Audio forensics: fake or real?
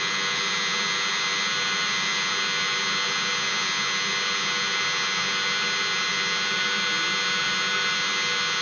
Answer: real